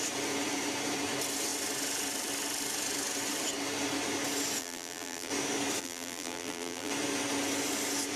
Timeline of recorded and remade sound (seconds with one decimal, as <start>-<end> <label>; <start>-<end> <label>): 0.0-4.6 recorded; 4.6-5.3 remade; 5.3-5.8 recorded; 5.8-6.9 remade; 6.9-8.2 recorded